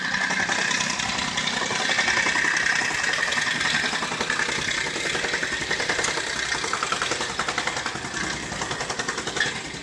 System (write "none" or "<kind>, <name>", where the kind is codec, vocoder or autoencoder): none